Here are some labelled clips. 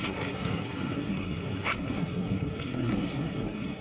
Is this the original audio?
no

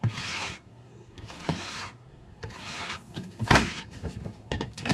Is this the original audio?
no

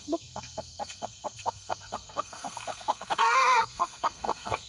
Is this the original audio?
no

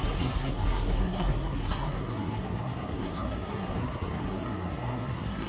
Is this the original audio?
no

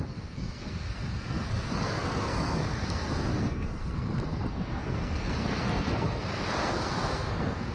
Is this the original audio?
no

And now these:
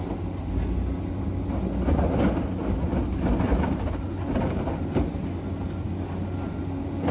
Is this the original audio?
yes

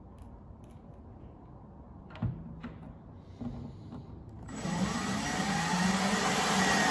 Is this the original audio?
yes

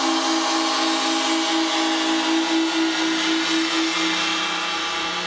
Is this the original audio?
yes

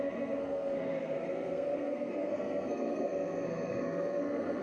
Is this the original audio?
no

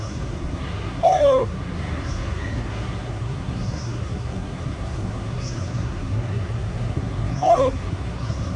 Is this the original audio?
no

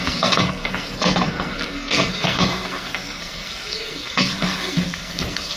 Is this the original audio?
no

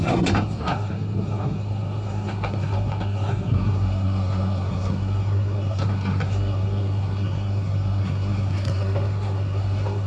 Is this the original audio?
no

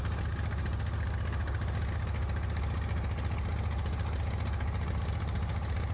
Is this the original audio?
yes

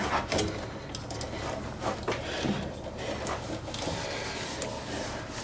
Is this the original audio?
yes